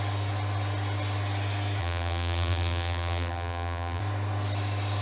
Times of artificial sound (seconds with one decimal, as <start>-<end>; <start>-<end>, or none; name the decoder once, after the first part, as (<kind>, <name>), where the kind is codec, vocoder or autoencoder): 1.8-4.0 (vocoder, BigVGAN v2)